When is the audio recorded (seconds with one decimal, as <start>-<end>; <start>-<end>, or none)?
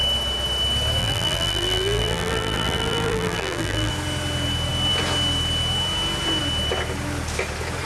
0.0-1.0; 3.9-7.9